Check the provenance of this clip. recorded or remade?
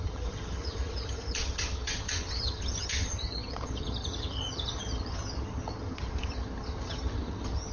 remade